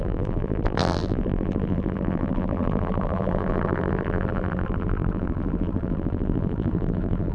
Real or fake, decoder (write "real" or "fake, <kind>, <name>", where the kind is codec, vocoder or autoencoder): fake, vocoder, BigVGAN v2